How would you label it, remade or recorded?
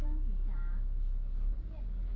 recorded